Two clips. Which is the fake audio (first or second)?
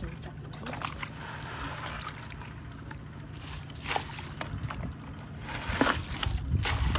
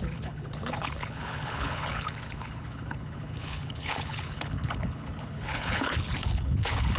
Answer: second